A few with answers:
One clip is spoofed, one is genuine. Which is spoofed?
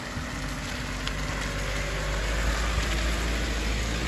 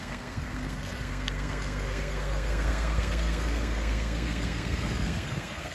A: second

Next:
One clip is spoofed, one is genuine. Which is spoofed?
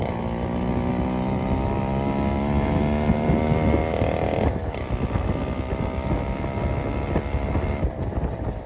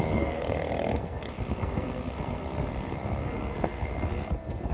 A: second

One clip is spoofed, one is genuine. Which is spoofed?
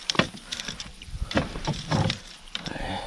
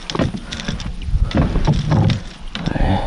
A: first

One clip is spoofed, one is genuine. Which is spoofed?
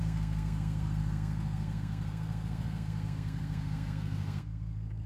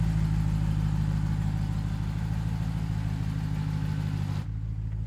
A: first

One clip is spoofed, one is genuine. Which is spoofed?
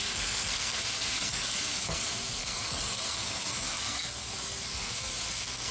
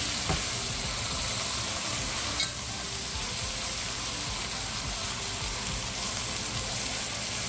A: first